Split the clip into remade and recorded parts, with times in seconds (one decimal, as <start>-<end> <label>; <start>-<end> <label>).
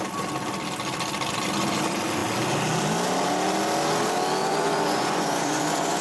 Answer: 0.0-4.4 recorded; 4.4-6.0 remade